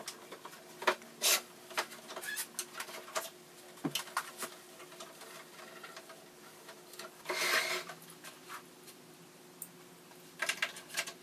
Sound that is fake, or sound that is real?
real